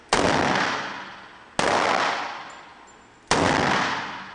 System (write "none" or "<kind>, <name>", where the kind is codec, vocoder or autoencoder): none